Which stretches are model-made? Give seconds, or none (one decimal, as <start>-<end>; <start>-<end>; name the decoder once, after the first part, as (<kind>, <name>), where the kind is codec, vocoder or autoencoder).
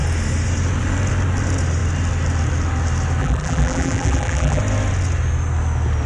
3.2-4.6 (vocoder, BigVGAN v2)